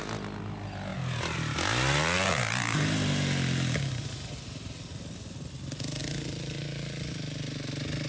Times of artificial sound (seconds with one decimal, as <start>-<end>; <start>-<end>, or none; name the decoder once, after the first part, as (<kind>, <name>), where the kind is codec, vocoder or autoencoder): none